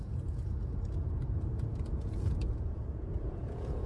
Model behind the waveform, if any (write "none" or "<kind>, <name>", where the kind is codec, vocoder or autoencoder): vocoder, Vocos